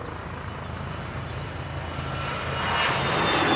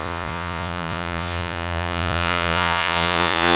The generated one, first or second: second